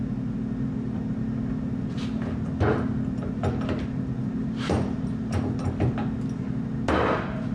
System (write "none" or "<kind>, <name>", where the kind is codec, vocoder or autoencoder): none